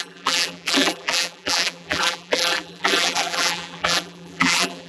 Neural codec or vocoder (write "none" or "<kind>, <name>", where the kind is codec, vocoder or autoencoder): vocoder, BigVGAN v2